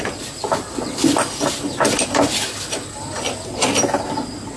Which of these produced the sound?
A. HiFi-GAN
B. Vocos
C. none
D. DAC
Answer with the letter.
C